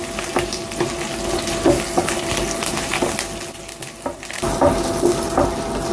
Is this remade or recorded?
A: recorded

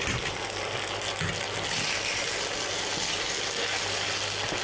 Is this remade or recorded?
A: recorded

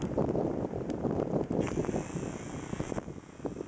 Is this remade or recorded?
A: recorded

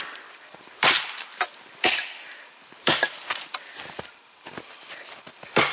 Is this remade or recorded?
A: recorded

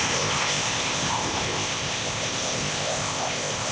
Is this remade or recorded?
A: remade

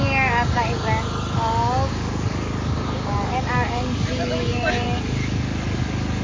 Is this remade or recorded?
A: remade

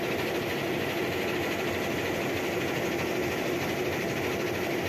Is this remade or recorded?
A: recorded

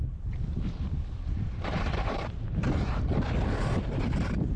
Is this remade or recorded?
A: recorded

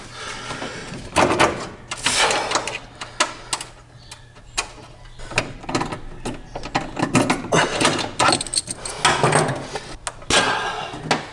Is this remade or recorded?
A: recorded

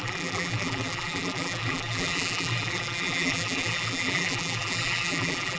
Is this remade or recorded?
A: remade